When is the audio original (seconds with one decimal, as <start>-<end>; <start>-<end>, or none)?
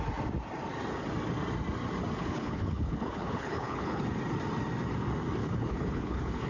0.0-2.2; 4.0-5.4